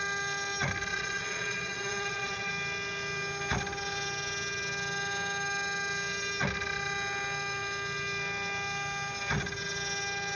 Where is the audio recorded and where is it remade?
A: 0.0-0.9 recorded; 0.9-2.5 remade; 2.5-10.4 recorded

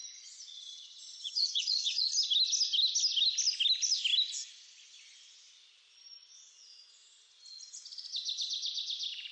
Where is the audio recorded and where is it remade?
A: 0.0-2.1 remade; 2.1-9.3 recorded

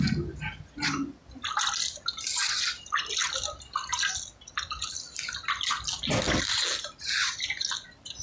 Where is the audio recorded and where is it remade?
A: 0.0-8.2 recorded